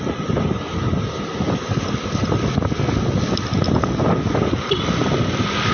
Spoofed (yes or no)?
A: no